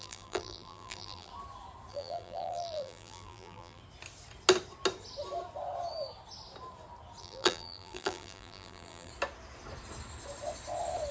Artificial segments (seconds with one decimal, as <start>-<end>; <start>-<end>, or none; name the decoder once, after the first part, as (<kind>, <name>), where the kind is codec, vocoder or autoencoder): 0.0-1.3 (vocoder, BigVGAN v2); 1.9-3.8; 7.2-9.1